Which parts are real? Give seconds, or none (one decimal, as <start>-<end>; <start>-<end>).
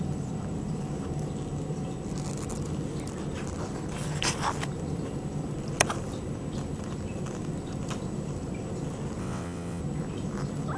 0.0-9.2; 9.8-10.8